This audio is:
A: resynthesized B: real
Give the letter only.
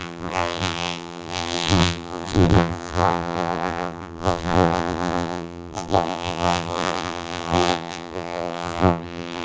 A